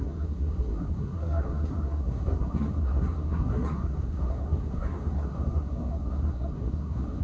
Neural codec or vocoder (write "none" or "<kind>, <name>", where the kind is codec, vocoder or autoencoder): codec, SNAC